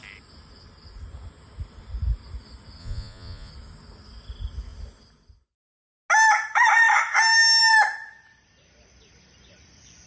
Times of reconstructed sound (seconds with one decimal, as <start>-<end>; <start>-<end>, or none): 2.8-3.5